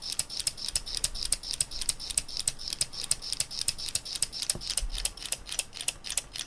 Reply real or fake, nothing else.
real